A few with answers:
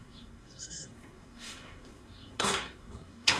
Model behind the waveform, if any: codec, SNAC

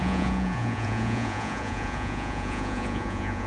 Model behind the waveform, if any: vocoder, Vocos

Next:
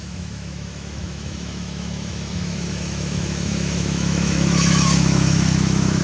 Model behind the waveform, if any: autoencoder, DAC-VAE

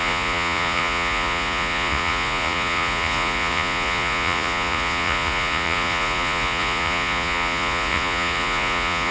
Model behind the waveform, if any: vocoder, Vocos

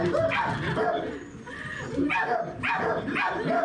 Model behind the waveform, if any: none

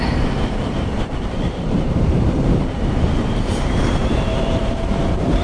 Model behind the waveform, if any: vocoder, BigVGAN v2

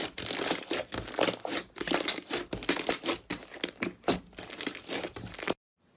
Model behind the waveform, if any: none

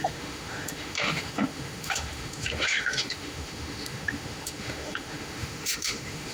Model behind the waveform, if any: autoencoder, DAC-VAE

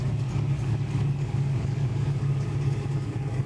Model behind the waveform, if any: codec, DAC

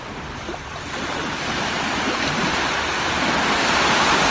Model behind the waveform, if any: none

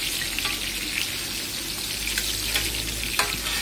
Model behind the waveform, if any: none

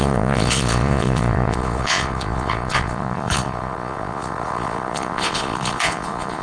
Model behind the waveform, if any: vocoder, Vocos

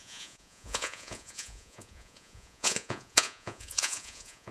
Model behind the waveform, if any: vocoder, Vocos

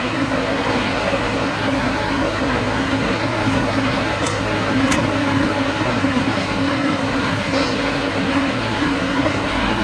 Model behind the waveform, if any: codec, SNAC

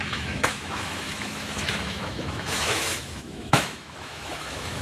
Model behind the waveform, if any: autoencoder, DAC-VAE